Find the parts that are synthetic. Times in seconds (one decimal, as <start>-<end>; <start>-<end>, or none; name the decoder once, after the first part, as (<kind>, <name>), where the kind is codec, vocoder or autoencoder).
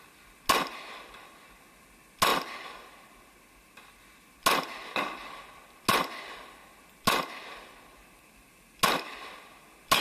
none